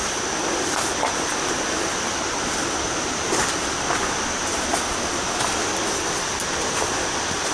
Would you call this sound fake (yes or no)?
no